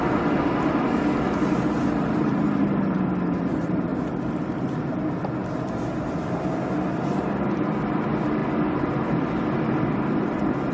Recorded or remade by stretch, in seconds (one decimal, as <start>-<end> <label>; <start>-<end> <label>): 0.0-10.7 recorded